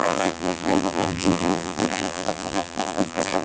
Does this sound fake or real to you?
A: fake